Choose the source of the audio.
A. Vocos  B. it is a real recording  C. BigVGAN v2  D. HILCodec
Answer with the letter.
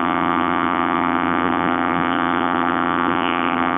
C